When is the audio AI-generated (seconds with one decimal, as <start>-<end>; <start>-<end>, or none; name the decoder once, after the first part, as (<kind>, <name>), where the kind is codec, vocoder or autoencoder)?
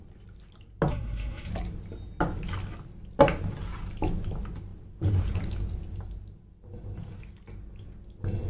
0.9-1.5 (codec, SNAC)